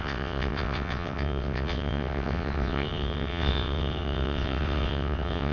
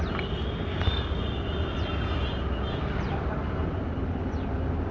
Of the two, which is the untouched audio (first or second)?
second